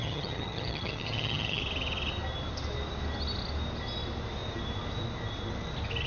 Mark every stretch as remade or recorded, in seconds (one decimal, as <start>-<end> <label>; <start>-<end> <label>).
0.0-1.6 remade; 1.6-6.1 recorded

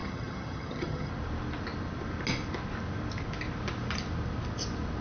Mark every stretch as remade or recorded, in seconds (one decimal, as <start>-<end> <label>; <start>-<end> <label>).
0.0-1.1 remade; 1.1-5.0 recorded

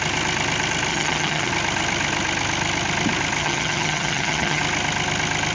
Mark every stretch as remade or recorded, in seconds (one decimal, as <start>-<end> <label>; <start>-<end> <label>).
0.0-0.9 recorded; 0.9-1.5 remade; 1.5-3.4 recorded; 3.4-4.6 remade; 4.6-5.5 recorded

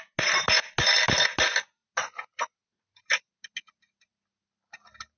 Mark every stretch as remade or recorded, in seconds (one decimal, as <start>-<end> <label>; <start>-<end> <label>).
0.0-5.2 recorded